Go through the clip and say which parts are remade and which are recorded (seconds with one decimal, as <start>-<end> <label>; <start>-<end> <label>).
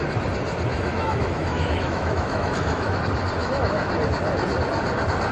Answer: 0.0-0.7 recorded; 0.7-3.0 remade; 3.0-3.4 recorded; 3.4-3.9 remade; 3.9-5.3 recorded